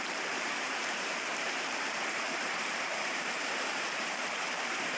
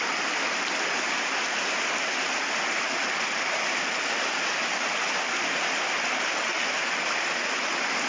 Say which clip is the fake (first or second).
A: first